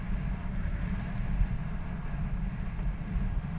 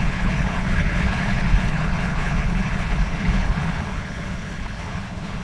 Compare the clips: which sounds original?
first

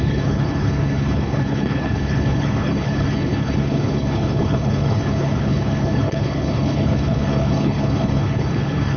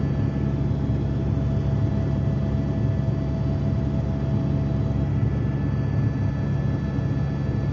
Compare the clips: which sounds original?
second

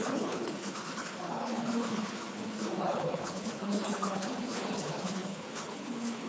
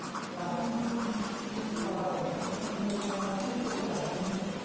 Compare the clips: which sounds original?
second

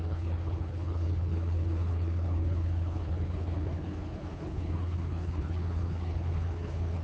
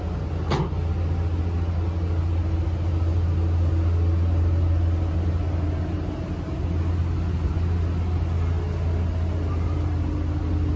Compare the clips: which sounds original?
second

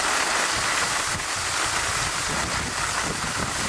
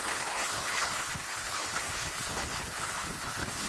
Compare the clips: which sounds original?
first